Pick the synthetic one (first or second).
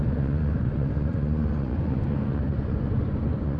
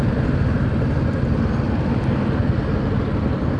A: first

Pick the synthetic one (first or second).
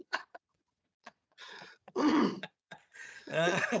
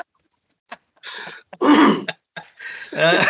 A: first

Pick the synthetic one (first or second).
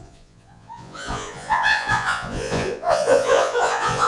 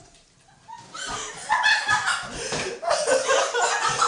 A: first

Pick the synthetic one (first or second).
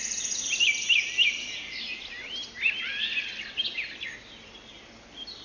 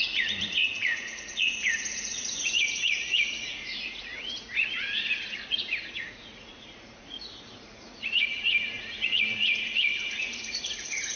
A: second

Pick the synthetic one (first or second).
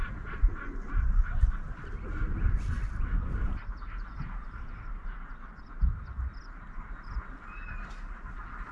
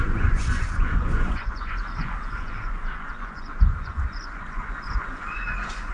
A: second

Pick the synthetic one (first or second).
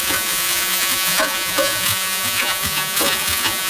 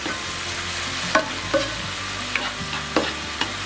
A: first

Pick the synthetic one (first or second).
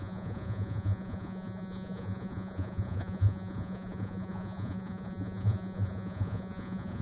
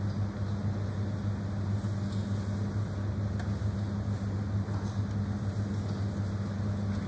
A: first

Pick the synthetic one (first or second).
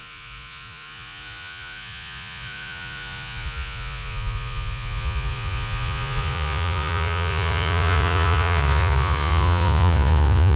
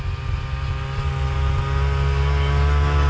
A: first